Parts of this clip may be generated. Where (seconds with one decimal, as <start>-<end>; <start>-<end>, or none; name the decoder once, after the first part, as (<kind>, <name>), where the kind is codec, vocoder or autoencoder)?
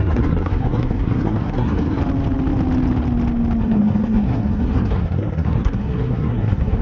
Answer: 0.0-2.0 (codec, SNAC); 3.6-6.8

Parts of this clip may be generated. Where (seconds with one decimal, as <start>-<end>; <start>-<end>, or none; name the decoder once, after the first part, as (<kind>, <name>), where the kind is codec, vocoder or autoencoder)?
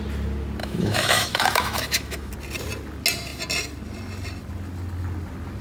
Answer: 0.6-2.3 (autoencoder, DAC-VAE)